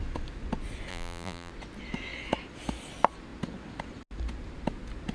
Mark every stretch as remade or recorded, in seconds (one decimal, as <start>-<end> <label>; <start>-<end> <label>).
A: 0.0-0.9 recorded; 0.9-1.5 remade; 1.5-5.1 recorded

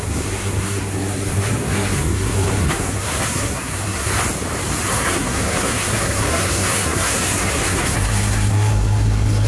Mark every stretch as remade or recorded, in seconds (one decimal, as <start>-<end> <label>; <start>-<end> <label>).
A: 0.0-4.1 remade; 4.1-4.9 recorded; 4.9-9.5 remade

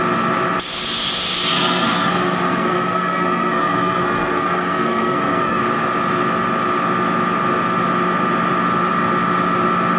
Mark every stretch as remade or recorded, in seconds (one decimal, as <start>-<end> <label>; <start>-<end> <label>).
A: 0.0-1.5 recorded; 1.5-5.6 remade; 5.6-10.0 recorded